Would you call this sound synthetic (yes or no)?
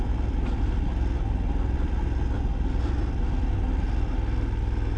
no